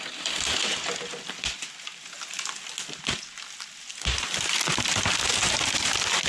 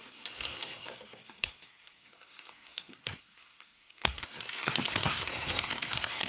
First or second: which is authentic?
first